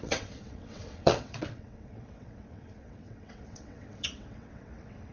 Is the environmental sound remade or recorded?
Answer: remade